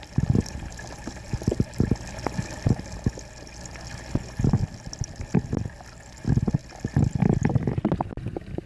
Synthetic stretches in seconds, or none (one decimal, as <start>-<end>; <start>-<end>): none